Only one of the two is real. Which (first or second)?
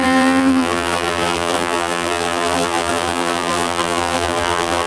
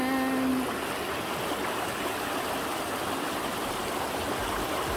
second